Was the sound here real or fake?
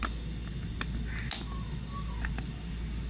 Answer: real